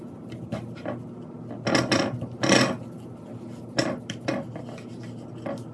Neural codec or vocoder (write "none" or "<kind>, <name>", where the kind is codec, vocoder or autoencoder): none